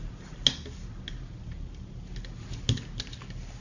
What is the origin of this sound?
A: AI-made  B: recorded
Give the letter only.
B